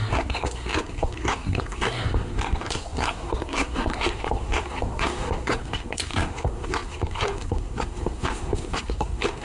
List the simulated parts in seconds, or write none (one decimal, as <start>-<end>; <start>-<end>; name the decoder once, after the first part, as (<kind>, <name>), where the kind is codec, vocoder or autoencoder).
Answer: 0.0-9.4 (codec, SNAC)